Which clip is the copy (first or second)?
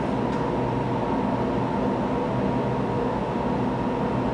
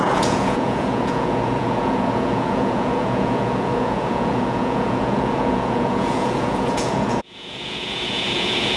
second